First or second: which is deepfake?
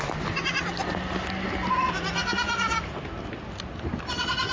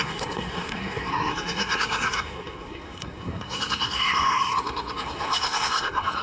second